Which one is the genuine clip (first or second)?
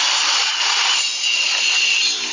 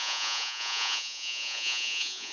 first